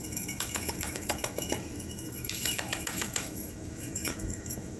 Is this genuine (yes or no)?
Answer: no